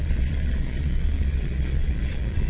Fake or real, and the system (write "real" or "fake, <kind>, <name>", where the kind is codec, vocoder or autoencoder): fake, vocoder, Vocos